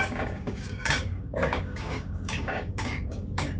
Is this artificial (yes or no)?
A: yes